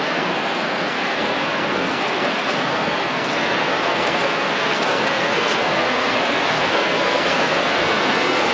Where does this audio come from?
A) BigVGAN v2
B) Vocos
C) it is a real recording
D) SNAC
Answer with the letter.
D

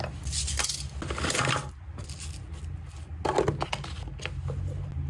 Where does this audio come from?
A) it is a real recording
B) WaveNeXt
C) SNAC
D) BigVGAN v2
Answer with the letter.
A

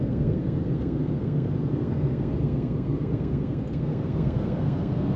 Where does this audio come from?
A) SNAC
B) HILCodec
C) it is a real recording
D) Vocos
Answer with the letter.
A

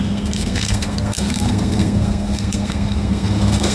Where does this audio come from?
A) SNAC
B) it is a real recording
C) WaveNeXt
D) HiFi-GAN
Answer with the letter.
A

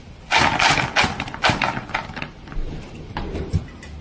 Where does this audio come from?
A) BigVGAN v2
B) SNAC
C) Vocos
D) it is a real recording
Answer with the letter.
A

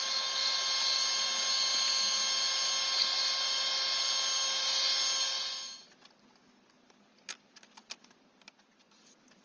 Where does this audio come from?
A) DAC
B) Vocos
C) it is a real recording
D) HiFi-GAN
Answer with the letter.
C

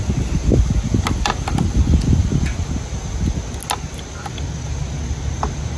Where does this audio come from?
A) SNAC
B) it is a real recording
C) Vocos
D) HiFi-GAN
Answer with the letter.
B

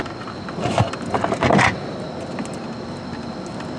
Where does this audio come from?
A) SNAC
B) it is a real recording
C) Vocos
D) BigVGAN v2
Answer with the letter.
B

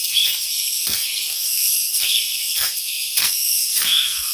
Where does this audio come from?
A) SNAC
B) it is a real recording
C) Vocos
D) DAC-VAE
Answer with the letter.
A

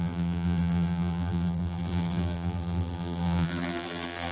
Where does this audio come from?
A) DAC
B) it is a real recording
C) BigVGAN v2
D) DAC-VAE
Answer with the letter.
C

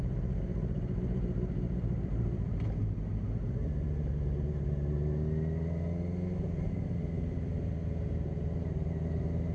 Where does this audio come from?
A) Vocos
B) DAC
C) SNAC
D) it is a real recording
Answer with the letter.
D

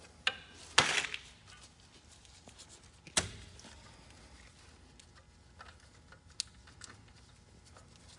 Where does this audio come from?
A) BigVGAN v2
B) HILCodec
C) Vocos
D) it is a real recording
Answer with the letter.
D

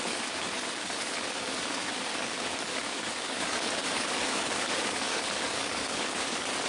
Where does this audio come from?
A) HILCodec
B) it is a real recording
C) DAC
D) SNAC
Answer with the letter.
C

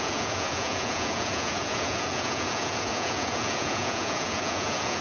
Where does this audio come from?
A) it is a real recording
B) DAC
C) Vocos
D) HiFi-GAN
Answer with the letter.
C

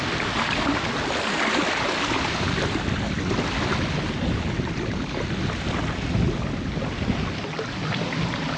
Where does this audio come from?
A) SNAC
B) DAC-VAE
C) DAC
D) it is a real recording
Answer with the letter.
D